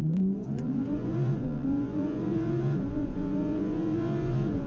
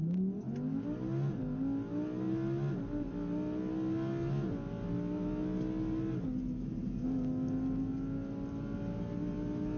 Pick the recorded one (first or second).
second